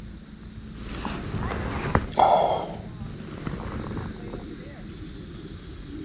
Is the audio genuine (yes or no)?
yes